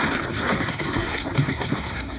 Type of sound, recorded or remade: remade